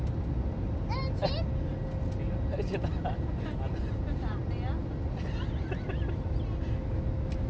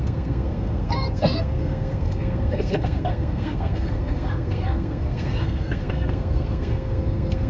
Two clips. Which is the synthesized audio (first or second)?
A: second